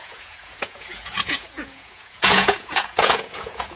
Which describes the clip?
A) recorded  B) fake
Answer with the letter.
B